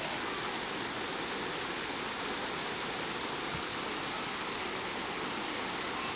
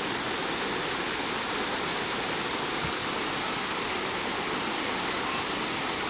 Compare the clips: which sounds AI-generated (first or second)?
second